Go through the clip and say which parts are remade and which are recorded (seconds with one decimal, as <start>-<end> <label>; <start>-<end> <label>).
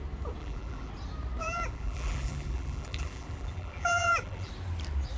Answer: 0.0-0.4 recorded; 0.4-0.9 remade; 0.9-1.4 recorded; 1.4-4.5 remade; 4.5-5.2 recorded